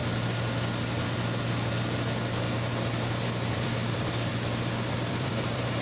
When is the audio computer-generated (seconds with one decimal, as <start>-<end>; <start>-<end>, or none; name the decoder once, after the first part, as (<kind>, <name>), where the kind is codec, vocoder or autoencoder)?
3.5-4.3 (vocoder, BigVGAN v2); 4.9-5.8